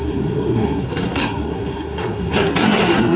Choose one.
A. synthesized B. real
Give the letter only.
A